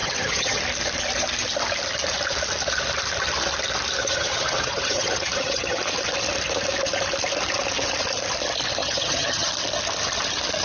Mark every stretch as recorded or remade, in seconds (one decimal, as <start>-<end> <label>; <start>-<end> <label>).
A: 0.0-0.6 remade; 0.6-4.0 recorded; 4.0-5.8 remade; 5.8-8.8 recorded; 8.8-9.5 remade; 9.5-10.6 recorded